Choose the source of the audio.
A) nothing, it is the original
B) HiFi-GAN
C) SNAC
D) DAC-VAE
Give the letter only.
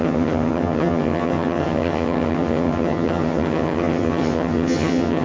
B